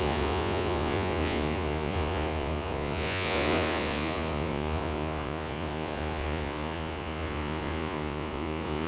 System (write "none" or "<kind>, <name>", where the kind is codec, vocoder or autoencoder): vocoder, Vocos